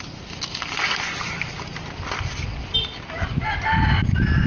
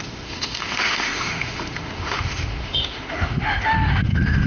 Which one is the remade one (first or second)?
second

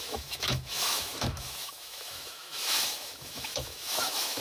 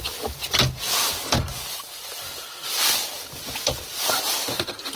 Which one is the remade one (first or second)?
first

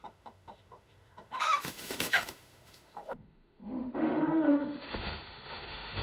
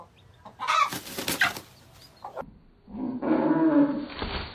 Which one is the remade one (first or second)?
first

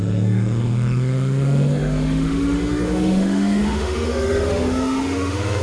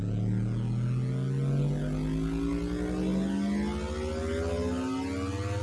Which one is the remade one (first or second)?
first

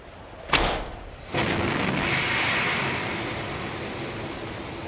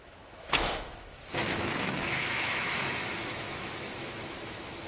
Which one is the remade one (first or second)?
second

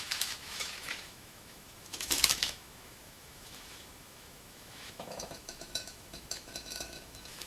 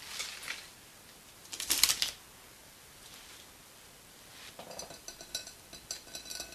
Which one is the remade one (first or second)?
first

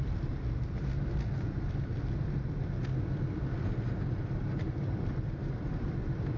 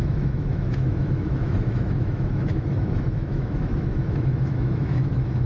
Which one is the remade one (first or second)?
second